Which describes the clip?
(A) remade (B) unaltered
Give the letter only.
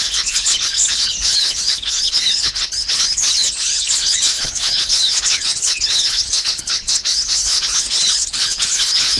A